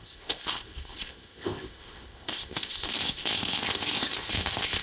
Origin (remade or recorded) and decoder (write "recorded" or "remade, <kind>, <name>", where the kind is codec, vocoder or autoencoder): remade, codec, ZipCodec